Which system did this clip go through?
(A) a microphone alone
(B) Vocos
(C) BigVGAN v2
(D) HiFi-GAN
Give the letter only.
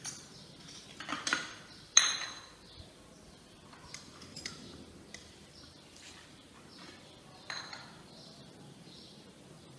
C